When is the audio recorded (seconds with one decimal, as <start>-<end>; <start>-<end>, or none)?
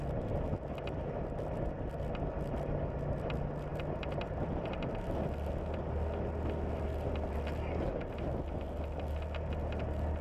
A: 0.0-10.2